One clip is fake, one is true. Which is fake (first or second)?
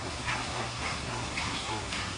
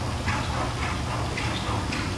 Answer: first